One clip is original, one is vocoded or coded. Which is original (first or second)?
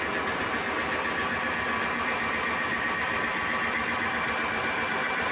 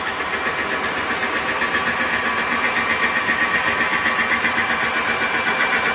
second